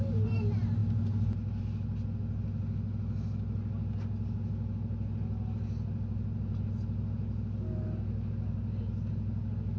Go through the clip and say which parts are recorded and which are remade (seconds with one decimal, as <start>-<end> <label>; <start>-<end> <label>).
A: 0.0-9.8 recorded